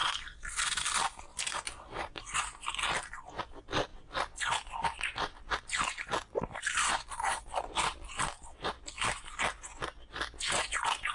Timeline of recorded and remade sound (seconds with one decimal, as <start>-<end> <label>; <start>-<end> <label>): 0.0-2.2 remade; 2.2-3.9 recorded; 3.9-8.1 remade; 8.1-11.1 recorded